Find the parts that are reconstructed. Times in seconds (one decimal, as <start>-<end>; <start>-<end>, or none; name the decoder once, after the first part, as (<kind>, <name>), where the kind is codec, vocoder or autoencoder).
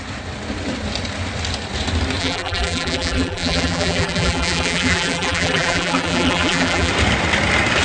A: 2.2-6.9 (vocoder, BigVGAN v2)